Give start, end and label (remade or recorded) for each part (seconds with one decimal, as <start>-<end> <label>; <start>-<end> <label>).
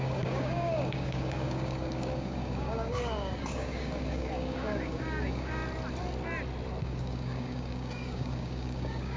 0.0-5.6 remade; 5.6-6.8 recorded; 6.8-9.2 remade